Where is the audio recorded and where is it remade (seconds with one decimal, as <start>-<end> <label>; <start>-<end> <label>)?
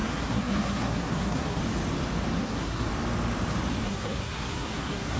0.0-1.6 remade; 1.6-2.4 recorded; 2.4-2.9 remade; 2.9-3.8 recorded; 3.8-5.2 remade